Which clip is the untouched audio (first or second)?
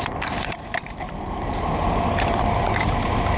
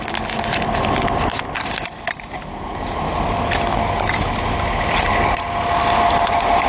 second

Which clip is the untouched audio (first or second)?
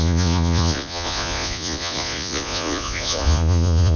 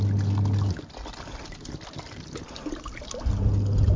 second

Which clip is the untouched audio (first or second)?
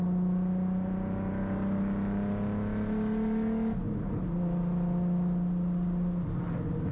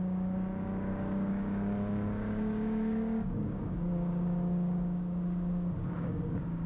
first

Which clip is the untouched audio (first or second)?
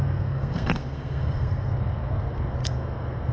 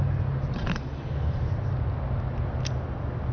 second